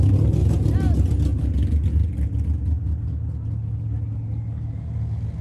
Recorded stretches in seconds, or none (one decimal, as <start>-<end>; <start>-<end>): 0.0-5.4